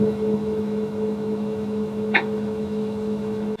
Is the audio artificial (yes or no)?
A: yes